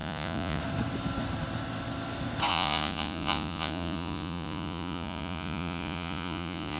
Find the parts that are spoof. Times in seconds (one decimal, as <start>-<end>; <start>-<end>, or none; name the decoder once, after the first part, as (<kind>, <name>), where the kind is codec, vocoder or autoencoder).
0.0-0.6 (vocoder, Vocos); 2.5-6.8